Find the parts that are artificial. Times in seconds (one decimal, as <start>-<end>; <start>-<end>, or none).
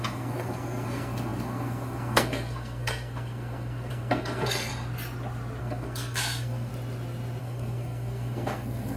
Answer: 0.0-4.7; 5.6-6.7; 7.4-9.0